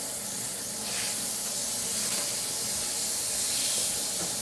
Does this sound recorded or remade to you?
recorded